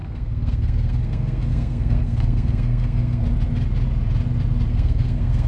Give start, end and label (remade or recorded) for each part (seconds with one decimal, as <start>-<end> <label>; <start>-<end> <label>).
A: 0.0-3.2 remade; 3.2-4.7 recorded; 4.7-5.5 remade